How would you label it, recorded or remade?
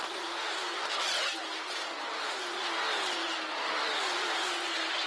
recorded